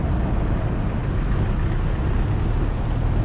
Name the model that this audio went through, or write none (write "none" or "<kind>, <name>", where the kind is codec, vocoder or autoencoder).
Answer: none